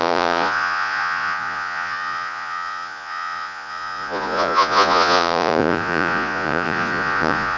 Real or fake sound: fake